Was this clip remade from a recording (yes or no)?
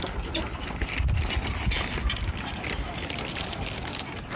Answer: no